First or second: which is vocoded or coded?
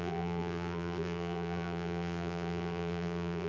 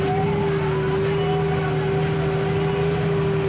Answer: first